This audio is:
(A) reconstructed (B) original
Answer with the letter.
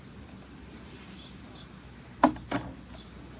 B